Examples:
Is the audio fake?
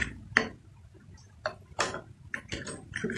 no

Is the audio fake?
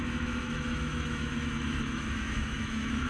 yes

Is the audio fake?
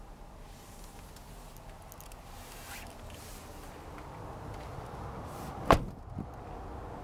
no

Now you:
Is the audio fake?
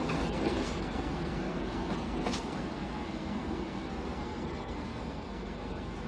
yes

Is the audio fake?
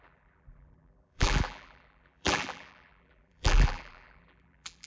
yes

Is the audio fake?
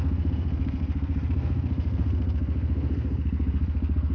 yes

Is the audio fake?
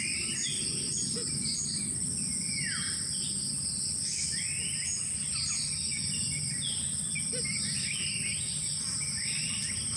no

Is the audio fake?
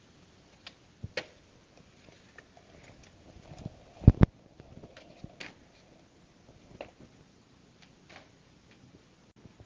no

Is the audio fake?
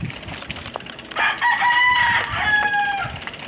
no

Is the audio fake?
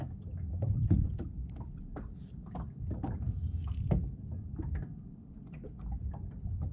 no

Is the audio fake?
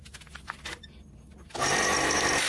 no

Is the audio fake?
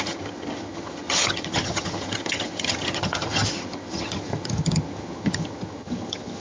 yes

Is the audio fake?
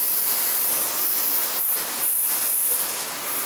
no